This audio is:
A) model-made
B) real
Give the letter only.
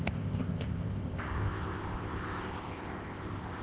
A